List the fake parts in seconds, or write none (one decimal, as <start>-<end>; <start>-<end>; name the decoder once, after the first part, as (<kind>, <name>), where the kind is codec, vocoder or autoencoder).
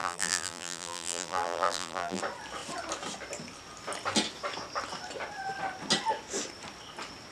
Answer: 0.0-2.2 (vocoder, BigVGAN v2)